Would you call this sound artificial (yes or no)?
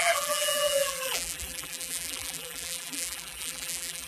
yes